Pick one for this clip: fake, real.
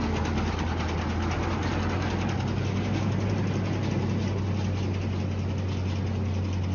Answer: real